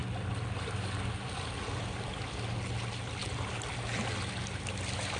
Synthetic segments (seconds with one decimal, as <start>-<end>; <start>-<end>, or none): none